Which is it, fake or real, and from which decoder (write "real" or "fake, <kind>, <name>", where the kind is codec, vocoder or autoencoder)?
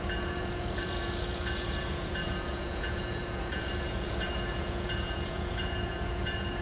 fake, vocoder, Vocos